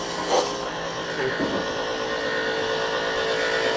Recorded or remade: recorded